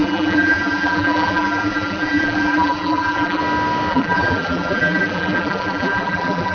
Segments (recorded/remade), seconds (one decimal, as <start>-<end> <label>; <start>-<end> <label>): 0.0-3.4 remade; 3.4-3.9 recorded; 3.9-6.5 remade

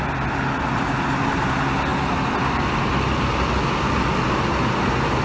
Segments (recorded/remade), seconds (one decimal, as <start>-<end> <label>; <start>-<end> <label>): 0.0-1.9 recorded; 1.9-5.2 remade

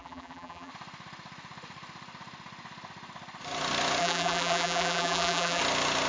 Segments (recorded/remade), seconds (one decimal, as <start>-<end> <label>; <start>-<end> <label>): 0.0-0.7 remade; 0.7-4.0 recorded; 4.0-5.6 remade; 5.6-6.1 recorded

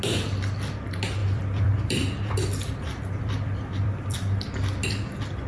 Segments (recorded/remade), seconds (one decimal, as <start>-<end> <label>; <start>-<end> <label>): 0.0-1.2 recorded; 1.2-4.5 remade; 4.5-5.5 recorded

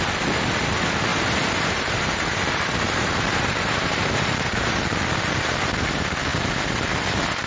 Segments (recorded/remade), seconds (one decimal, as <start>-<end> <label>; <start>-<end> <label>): 0.0-1.1 recorded; 1.1-4.8 remade; 4.8-7.5 recorded